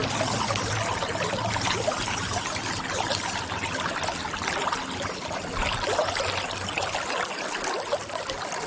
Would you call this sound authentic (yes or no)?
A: yes